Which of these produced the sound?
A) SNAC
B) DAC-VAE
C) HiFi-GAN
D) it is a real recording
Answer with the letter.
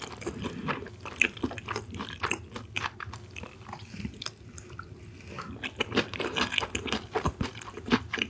D